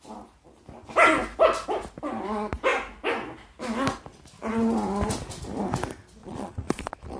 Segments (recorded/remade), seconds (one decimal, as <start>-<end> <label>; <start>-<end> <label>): 0.0-6.2 recorded; 6.2-7.2 remade